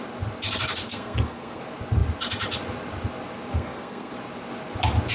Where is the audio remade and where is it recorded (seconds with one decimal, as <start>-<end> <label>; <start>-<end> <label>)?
0.0-0.8 recorded; 0.8-1.6 remade; 1.6-3.5 recorded; 3.5-4.1 remade; 4.1-5.1 recorded